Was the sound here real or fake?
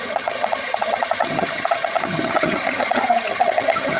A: fake